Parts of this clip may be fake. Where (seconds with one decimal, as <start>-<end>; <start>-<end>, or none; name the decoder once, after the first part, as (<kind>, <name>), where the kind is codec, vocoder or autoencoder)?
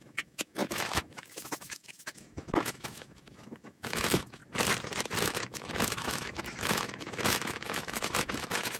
0.0-4.4 (autoencoder, DAC-VAE); 5.2-8.8